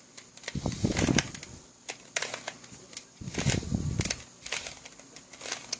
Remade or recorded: recorded